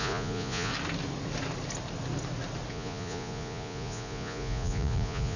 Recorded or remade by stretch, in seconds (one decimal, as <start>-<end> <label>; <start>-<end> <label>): 0.0-0.7 remade; 0.7-2.7 recorded; 2.7-5.4 remade